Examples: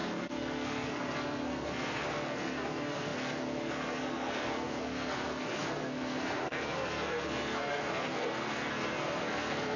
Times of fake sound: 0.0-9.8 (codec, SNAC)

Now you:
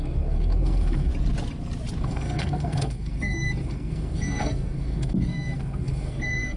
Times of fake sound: 0.0-1.1 (codec, SNAC); 2.0-6.6

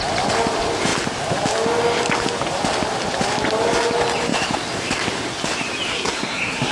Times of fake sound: 5.9-6.7 (codec, SNAC)